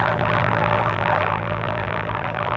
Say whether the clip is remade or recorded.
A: remade